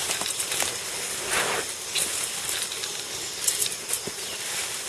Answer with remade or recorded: recorded